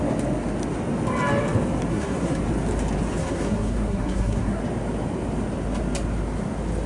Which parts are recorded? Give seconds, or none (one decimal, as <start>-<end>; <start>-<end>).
0.0-1.9; 2.4-3.2; 4.6-6.9